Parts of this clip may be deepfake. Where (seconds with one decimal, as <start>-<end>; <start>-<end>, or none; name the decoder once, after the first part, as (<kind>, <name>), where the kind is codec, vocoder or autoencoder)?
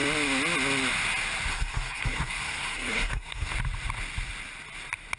1.5-3.5 (codec, SNAC)